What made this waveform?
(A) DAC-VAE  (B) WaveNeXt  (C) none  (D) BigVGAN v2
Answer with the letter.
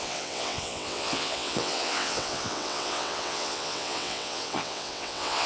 B